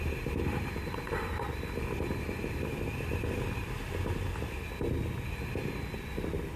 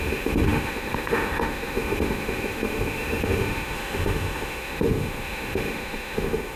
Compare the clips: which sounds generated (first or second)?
second